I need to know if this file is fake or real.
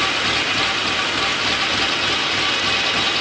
real